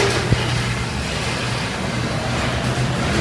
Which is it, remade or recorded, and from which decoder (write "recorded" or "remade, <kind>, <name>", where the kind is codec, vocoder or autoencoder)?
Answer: recorded